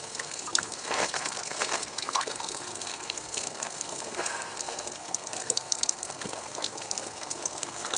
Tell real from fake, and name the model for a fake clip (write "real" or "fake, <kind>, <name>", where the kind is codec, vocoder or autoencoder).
fake, codec, SNAC